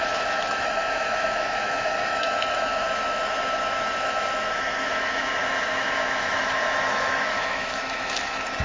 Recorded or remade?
remade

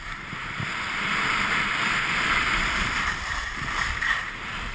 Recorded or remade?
remade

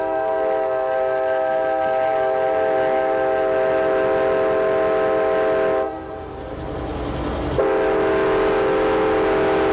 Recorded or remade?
recorded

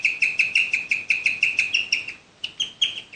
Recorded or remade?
recorded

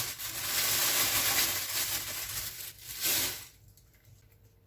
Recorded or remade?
recorded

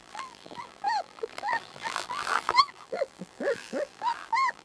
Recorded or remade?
remade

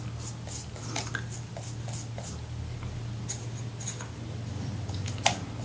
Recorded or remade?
recorded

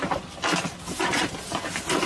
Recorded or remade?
recorded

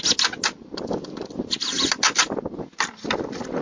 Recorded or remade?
recorded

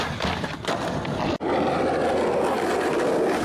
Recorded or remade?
recorded